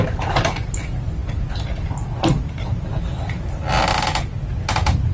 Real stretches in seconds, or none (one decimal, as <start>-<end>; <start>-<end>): 0.0-5.1

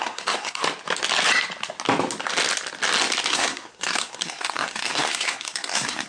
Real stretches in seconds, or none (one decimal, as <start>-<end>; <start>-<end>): 0.6-3.3

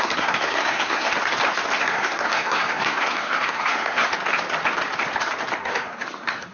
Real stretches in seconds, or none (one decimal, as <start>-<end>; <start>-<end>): 1.1-1.8; 4.1-5.6

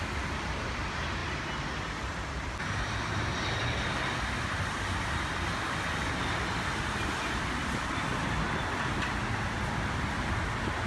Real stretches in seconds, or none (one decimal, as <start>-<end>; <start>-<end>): 0.0-10.9

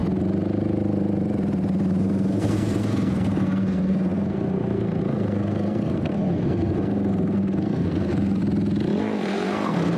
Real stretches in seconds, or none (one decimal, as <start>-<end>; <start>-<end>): 0.0-2.0; 8.4-9.0

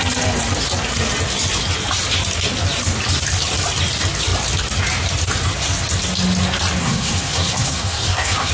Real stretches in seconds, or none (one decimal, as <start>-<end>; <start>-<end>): 0.0-6.8

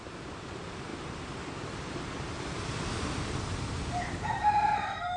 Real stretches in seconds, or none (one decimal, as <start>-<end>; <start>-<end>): 0.0-5.2